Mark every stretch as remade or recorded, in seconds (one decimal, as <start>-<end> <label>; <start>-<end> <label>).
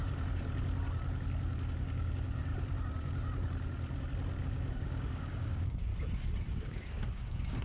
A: 0.0-1.8 recorded; 1.8-2.5 remade; 2.5-4.4 recorded; 4.4-5.9 remade; 5.9-6.5 recorded; 6.5-7.6 remade